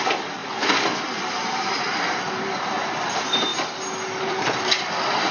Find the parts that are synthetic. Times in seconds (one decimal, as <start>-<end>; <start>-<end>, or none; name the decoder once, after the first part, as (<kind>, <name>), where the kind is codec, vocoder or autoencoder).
0.0-0.4 (vocoder, BigVGAN v2); 1.1-3.5; 4.2-5.3